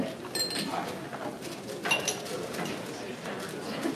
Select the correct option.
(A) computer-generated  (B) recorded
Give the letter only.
B